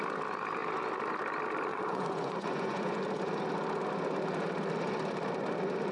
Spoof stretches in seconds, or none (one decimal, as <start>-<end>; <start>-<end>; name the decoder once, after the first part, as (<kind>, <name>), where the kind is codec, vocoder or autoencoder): 1.7-3.0 (vocoder, Vocos)